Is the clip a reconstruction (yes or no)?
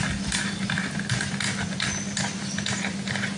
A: no